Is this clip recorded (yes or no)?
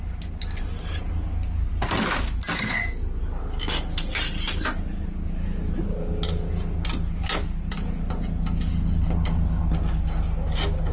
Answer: yes